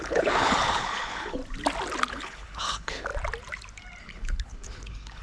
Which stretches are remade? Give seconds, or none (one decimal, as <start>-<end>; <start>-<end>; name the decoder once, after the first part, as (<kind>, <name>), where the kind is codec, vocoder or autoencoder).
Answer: 0.0-1.4 (codec, HILCodec); 2.1-3.1; 4.0-5.2